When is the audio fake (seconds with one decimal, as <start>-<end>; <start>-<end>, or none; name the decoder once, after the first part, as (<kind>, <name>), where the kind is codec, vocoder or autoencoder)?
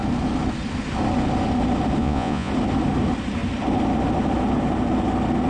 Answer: 2.0-2.5 (vocoder, Vocos)